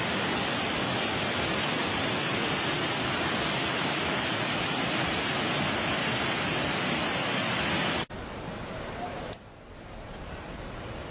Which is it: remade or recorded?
recorded